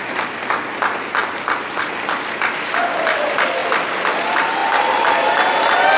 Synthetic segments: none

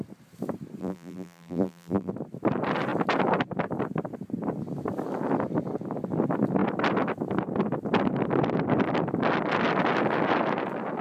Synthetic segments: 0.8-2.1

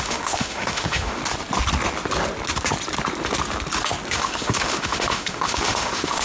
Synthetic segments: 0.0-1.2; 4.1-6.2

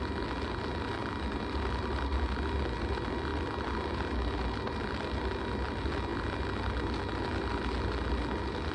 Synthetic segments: none